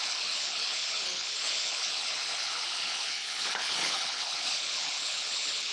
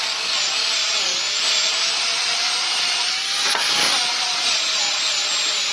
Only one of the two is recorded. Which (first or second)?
second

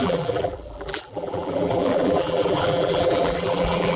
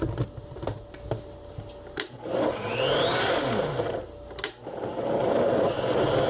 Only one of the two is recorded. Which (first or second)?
second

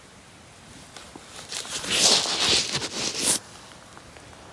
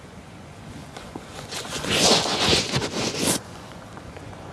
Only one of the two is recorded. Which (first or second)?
first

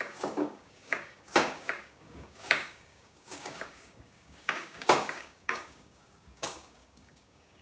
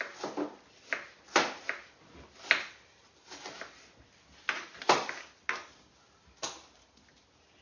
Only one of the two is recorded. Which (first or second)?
second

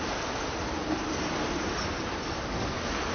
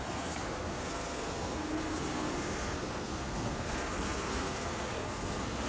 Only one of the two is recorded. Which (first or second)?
first